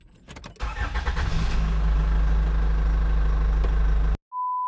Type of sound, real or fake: real